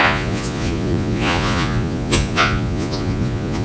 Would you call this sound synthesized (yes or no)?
yes